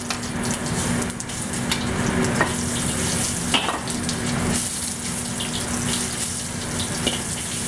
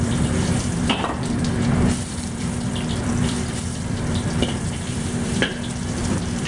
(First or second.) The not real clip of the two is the second